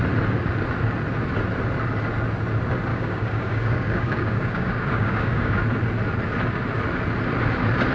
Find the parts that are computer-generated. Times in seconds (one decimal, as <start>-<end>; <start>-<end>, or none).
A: 2.9-5.6

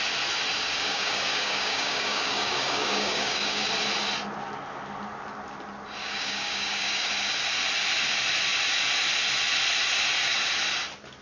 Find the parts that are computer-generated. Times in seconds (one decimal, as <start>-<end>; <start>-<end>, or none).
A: 0.7-3.7; 6.0-7.1

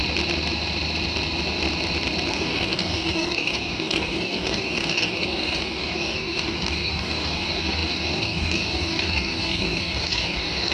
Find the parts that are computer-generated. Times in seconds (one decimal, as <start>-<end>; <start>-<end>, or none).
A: 2.3-10.7

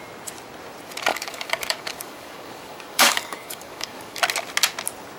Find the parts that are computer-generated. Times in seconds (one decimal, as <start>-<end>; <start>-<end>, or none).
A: 1.1-4.2

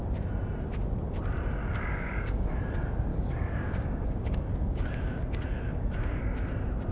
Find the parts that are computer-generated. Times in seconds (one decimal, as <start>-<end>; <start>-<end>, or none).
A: 1.6-2.6; 3.1-6.2